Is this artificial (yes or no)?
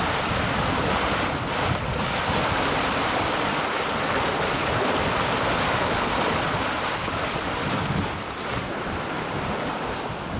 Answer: no